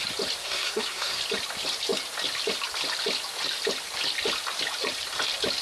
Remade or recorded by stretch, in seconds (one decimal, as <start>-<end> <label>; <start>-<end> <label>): 0.0-0.4 recorded; 0.4-1.2 remade; 1.2-5.6 recorded